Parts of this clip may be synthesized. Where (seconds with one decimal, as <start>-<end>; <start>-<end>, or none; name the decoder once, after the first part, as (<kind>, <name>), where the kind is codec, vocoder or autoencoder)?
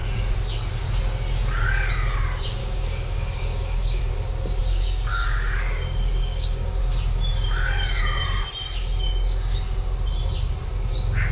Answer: 2.6-4.0 (codec, DAC); 4.6-6.8